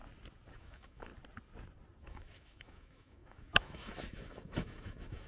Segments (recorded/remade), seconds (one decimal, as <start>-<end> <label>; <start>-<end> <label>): 0.0-0.5 recorded; 0.5-1.1 remade; 1.1-2.0 recorded; 2.0-5.3 remade